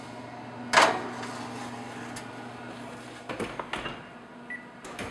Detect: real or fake real